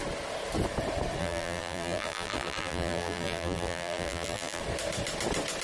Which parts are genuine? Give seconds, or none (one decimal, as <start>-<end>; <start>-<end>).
0.0-1.2; 4.6-5.6